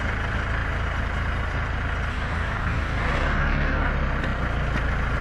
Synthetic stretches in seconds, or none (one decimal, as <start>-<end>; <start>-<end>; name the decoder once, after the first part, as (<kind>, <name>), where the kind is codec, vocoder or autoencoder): 2.1-3.9 (codec, DAC)